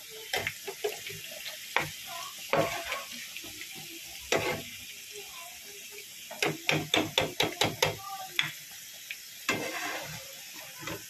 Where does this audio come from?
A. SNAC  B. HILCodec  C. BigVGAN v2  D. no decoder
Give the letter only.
D